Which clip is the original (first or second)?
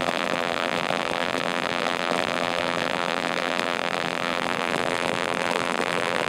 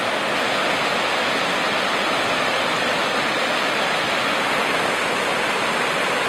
second